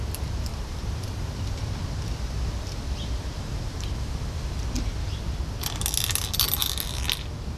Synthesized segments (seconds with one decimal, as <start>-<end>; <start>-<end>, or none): 0.5-1.6